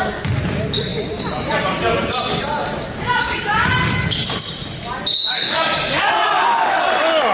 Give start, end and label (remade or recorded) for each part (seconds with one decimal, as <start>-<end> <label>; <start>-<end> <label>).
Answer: 0.0-3.2 recorded; 3.2-4.2 remade; 4.2-5.2 recorded; 5.2-6.0 remade; 6.0-7.3 recorded